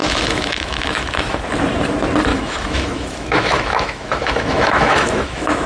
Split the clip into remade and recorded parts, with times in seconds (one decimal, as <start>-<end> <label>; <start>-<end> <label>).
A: 0.0-1.4 remade; 1.4-2.3 recorded; 2.3-5.7 remade